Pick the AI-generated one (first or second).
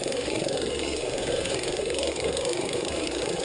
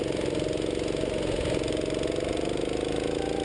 first